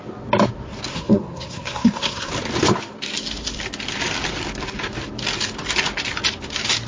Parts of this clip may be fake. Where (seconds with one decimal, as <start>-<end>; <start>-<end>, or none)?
0.9-2.3